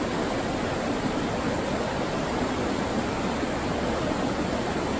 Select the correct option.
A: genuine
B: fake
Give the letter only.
A